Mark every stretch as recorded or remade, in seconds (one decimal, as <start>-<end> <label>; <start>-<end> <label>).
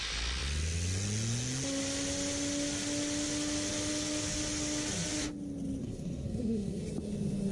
0.0-5.8 recorded; 5.8-6.8 remade; 6.8-7.5 recorded